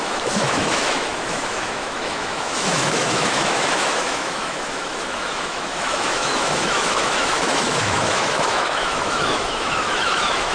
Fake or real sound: fake